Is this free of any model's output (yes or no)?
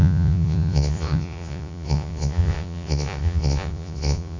no